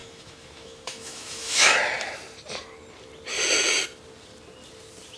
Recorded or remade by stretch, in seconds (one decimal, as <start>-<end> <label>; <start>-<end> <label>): 0.0-1.8 remade; 1.8-5.2 recorded